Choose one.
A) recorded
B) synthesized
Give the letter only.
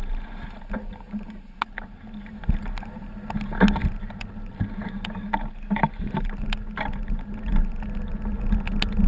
A